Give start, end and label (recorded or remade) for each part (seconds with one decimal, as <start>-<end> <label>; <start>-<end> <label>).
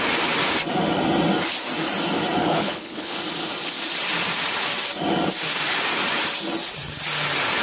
0.0-2.4 recorded; 2.4-3.2 remade; 3.2-7.6 recorded